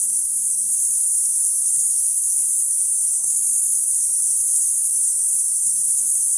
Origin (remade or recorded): remade